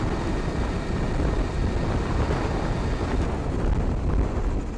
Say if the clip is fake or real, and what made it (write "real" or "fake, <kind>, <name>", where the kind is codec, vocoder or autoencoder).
real